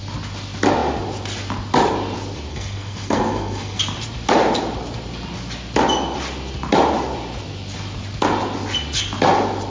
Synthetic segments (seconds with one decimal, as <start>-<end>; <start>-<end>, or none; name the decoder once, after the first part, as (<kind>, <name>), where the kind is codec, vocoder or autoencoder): 2.5-3.8 (codec, SNAC)

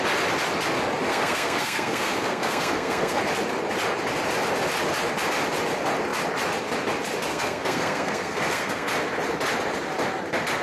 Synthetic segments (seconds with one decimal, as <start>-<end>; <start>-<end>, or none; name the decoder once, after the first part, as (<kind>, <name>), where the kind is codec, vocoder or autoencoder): 1.1-3.2 (codec, SNAC); 7.3-8.9

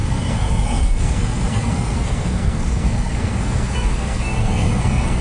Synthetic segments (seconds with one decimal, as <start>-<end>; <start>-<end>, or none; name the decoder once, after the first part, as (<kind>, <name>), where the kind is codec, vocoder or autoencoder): 0.0-5.2 (codec, SNAC)

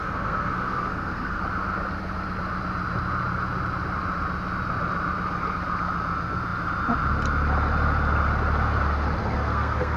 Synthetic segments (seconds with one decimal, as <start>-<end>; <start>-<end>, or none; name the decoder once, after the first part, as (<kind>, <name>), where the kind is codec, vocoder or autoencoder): 0.0-1.4 (codec, SNAC); 9.2-10.0

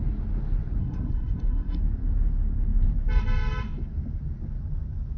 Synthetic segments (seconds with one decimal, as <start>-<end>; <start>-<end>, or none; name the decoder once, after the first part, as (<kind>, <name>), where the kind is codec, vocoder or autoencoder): 0.8-1.8 (codec, SNAC)